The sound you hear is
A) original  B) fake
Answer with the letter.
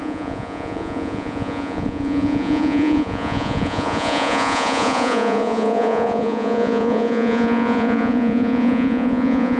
B